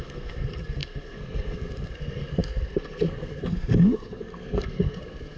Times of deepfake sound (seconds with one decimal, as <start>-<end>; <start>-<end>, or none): 0.0-5.4

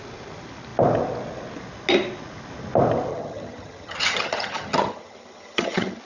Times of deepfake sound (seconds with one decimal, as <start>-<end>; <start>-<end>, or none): 3.1-6.0

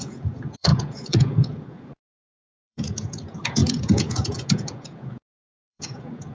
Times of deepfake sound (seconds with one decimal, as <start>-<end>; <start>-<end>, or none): 0.0-6.3

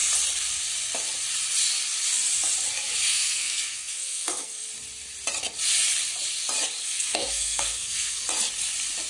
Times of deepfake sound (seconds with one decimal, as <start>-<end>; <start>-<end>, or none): 3.1-4.7; 6.8-8.2

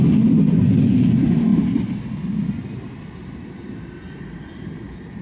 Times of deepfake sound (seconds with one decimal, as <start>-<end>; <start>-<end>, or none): none

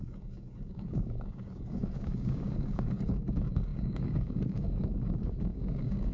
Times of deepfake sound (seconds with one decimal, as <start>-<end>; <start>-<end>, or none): 0.0-6.1

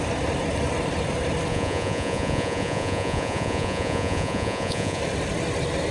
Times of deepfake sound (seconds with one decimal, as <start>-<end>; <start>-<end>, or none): 1.5-5.0